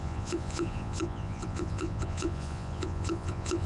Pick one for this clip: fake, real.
fake